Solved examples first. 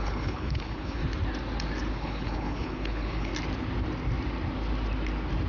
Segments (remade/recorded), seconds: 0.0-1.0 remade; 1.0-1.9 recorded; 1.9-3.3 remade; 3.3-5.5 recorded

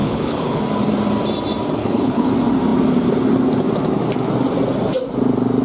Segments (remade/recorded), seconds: 0.0-0.6 remade; 0.6-1.8 recorded; 1.8-2.3 remade; 2.3-5.6 recorded

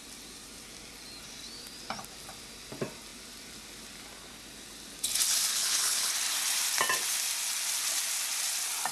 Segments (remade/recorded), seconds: 0.0-5.5 recorded; 5.5-6.1 remade; 6.1-8.9 recorded

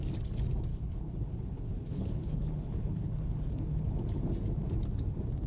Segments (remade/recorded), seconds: 0.0-0.7 recorded; 0.7-4.0 remade; 4.0-5.5 recorded